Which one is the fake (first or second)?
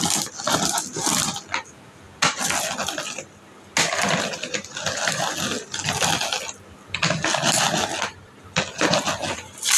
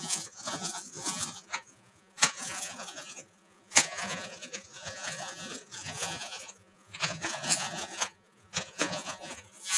second